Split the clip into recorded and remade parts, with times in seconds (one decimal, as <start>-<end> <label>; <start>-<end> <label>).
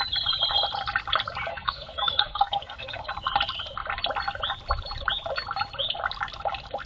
0.0-1.5 recorded; 1.5-3.1 remade; 3.1-6.9 recorded